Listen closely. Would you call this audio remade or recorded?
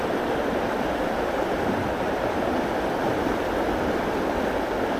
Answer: remade